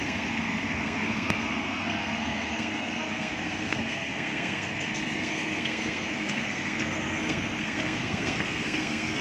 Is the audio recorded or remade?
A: remade